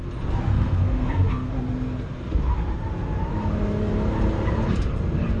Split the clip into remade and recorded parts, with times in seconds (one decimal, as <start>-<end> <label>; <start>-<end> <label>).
0.0-0.5 recorded; 0.5-1.5 remade; 1.5-5.4 recorded